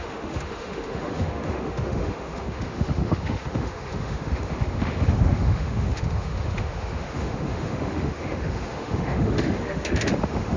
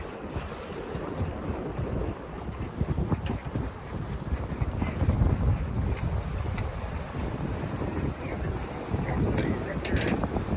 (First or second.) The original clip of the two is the second